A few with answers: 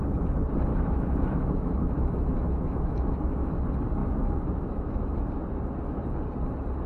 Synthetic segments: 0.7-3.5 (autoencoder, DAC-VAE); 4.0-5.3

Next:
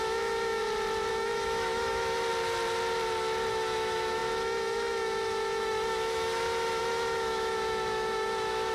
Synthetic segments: 0.0-0.6 (autoencoder, DAC-VAE); 1.1-2.3; 3.5-8.7